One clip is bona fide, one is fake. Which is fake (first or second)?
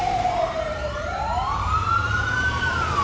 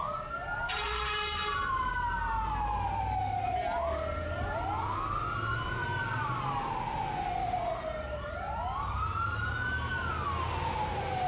first